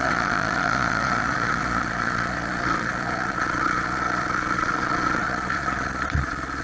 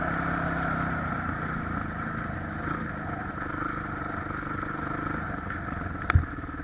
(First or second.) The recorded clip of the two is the second